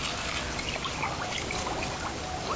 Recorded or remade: recorded